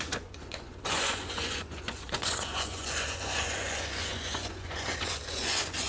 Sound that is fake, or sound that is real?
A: fake